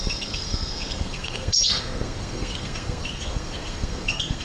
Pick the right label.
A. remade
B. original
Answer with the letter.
A